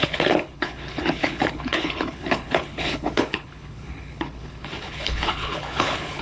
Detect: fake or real fake